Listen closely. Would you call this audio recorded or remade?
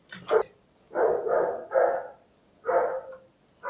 recorded